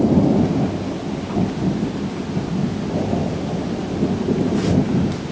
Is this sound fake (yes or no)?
no